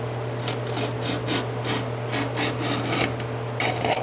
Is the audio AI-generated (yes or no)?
no